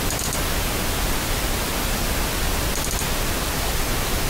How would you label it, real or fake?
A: real